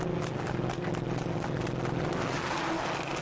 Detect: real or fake real